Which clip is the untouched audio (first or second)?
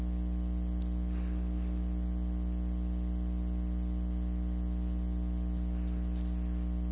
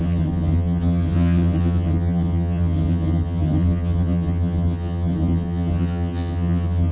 first